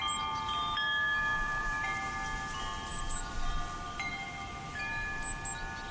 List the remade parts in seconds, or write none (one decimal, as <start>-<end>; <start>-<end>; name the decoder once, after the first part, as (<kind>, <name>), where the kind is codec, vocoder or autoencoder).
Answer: 1.3-2.1 (vocoder, BigVGAN v2); 2.9-3.5